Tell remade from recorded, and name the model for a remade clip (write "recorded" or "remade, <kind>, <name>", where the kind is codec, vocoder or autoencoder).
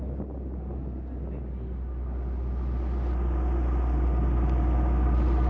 recorded